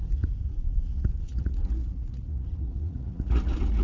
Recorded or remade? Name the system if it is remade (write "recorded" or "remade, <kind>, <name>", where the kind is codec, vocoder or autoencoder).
remade, vocoder, Vocos